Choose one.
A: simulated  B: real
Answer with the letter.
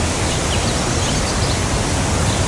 B